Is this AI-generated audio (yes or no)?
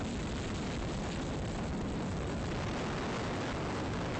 no